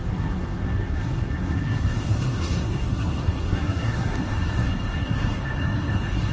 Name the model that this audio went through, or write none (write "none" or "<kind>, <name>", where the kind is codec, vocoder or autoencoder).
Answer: codec, SNAC